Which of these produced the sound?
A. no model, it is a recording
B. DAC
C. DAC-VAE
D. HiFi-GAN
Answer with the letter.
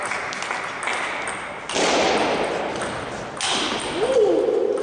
A